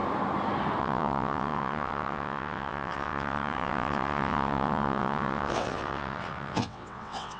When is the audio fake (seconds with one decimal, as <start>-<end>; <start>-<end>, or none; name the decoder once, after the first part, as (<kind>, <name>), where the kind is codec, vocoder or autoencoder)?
0.8-7.4 (vocoder, WaveNeXt)